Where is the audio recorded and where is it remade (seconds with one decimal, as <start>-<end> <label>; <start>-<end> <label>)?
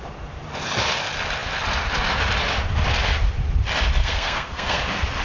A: 0.0-4.0 recorded; 4.0-4.8 remade; 4.8-5.2 recorded